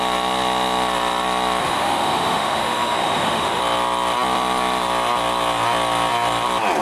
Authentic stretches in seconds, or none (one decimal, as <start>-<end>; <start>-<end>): 0.0-1.6; 3.6-6.8